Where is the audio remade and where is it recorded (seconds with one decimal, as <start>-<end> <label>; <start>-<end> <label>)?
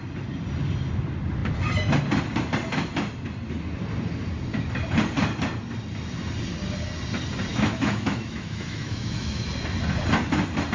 0.0-7.5 recorded; 7.5-9.5 remade; 9.5-10.7 recorded